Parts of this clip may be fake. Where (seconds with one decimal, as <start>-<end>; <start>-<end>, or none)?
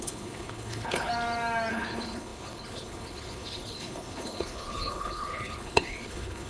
0.0-1.1; 1.7-6.5